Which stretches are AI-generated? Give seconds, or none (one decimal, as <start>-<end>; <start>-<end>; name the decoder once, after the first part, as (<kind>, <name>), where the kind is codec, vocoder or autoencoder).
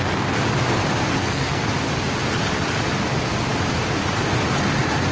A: 1.2-1.7 (codec, SNAC)